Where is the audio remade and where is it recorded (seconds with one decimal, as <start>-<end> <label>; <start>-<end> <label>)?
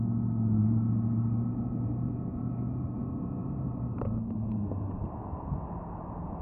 0.0-0.6 recorded; 0.6-3.0 remade; 3.0-3.4 recorded; 3.4-5.1 remade; 5.1-6.4 recorded